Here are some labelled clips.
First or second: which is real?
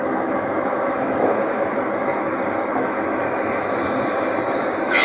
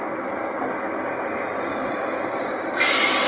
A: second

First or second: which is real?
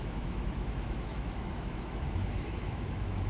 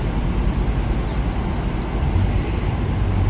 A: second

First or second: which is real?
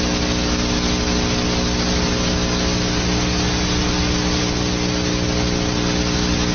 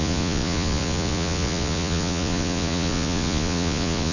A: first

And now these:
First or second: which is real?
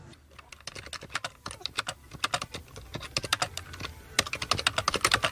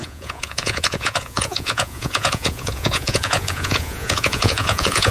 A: first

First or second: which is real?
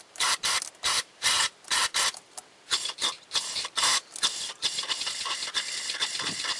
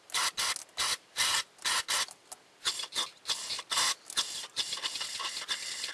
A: second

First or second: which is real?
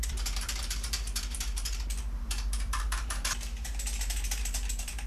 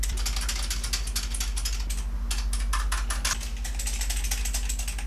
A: second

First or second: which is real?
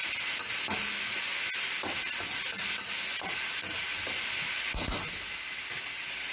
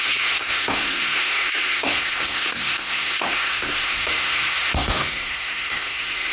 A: first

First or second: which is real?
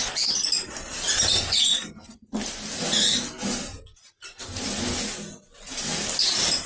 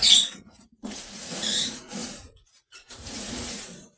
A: first